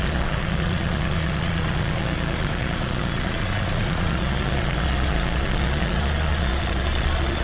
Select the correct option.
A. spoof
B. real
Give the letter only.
A